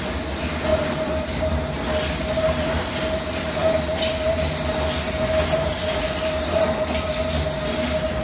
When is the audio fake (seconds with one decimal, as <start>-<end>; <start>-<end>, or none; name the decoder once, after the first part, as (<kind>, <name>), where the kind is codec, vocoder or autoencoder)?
none